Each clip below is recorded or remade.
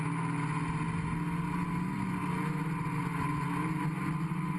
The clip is recorded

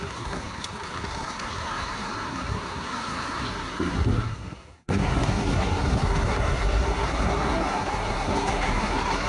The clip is remade